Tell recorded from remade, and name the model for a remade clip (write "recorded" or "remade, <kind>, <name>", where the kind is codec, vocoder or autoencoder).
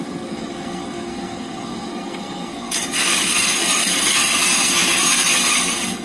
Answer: remade, codec, SNAC